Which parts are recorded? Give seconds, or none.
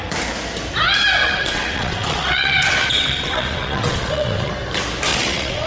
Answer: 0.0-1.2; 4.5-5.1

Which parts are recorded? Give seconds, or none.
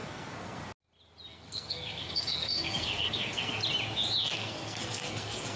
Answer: 0.6-1.3; 3.6-4.2